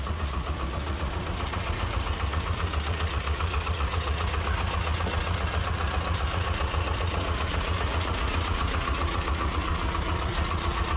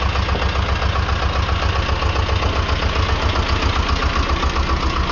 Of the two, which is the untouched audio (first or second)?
second